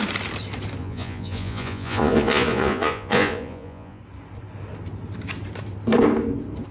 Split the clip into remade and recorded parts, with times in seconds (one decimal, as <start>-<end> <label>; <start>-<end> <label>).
0.0-0.8 recorded; 0.8-4.0 remade; 4.0-6.7 recorded